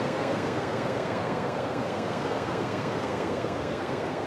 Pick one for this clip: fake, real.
fake